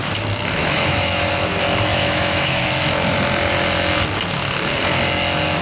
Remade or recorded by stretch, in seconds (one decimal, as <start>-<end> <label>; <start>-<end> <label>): 0.0-0.6 recorded; 0.6-1.3 remade; 1.3-1.9 recorded; 1.9-2.6 remade; 2.6-5.6 recorded